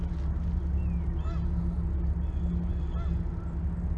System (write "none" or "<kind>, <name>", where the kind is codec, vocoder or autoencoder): none